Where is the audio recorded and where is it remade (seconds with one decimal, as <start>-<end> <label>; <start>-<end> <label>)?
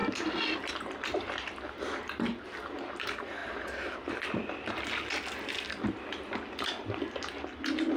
0.0-0.7 remade; 0.7-8.0 recorded